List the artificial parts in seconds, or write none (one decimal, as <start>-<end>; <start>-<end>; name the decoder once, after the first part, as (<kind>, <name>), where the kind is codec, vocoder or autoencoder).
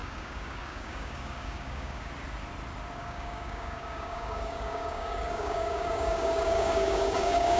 0.0-2.1 (codec, DAC); 3.0-7.6